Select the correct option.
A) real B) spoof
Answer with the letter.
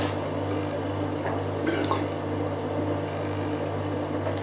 A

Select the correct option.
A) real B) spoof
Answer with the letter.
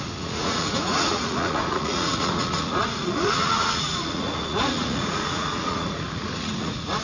B